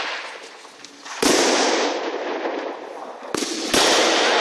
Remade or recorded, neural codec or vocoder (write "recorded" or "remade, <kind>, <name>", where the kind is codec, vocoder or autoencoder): recorded